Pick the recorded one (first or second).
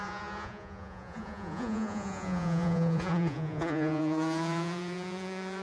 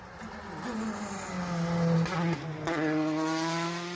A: second